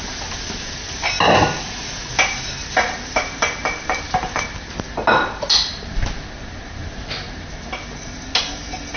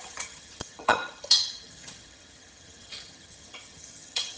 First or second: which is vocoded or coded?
second